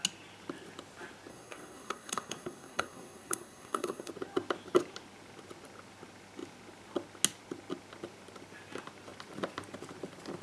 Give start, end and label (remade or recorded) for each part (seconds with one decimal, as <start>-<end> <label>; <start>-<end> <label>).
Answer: 0.0-1.3 recorded; 1.3-4.1 remade; 4.1-10.4 recorded